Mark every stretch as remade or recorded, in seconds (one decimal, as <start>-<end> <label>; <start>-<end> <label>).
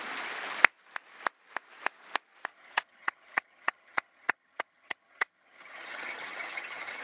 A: 0.0-2.5 recorded; 2.5-7.0 remade